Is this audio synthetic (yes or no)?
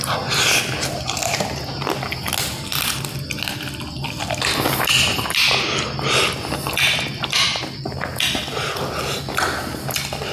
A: no